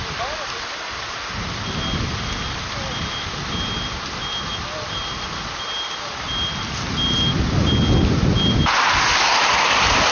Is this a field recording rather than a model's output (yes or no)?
yes